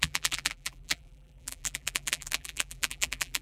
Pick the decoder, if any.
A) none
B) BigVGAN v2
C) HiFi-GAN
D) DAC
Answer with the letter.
B